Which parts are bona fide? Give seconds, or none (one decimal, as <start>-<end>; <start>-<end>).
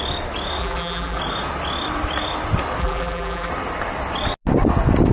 0.0-0.6; 1.2-2.8; 3.5-5.1